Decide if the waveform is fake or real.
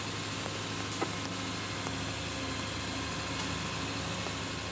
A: real